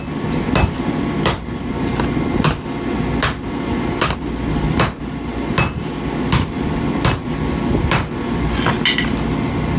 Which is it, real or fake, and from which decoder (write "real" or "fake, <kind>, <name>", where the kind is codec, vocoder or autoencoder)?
real